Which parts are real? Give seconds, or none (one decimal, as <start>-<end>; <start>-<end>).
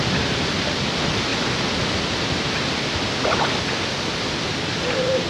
0.0-5.3